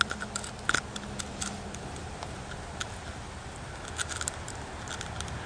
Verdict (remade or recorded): recorded